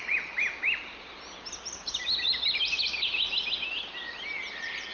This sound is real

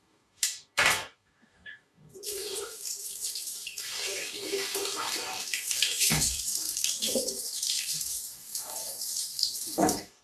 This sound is fake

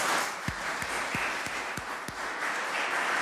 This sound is real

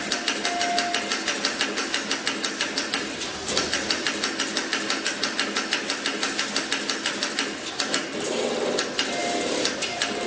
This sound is real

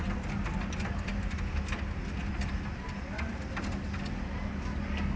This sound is real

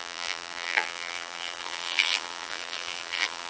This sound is fake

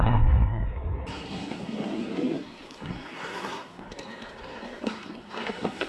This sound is fake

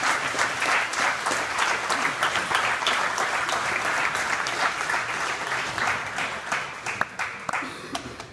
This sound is real